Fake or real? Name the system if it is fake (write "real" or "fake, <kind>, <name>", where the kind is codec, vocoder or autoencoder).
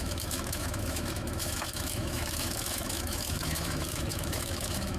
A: fake, autoencoder, DAC-VAE